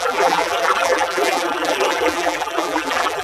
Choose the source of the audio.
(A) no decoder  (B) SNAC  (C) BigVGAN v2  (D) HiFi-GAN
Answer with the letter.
C